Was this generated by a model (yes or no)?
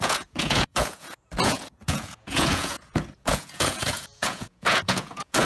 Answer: yes